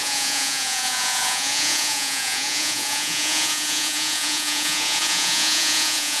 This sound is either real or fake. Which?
fake